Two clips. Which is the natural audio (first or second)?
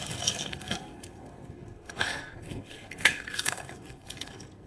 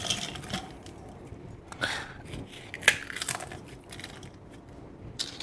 second